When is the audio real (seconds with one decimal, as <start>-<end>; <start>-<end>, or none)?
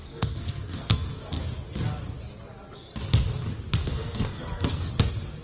1.4-3.8; 4.9-5.4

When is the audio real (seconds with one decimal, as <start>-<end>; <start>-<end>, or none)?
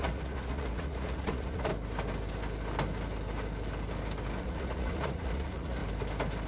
1.7-4.4; 5.8-6.5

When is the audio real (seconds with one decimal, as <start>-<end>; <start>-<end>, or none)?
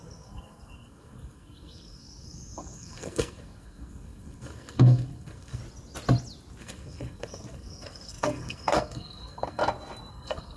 5.6-6.6; 9.6-10.1